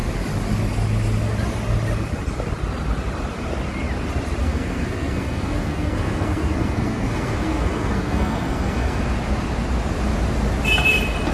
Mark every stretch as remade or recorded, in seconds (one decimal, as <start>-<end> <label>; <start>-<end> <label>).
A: 0.0-4.4 recorded; 4.4-9.0 remade; 9.0-11.3 recorded